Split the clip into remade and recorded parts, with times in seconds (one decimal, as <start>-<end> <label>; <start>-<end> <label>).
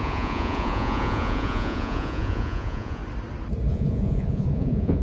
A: 0.0-3.0 remade; 3.0-3.7 recorded; 3.7-5.0 remade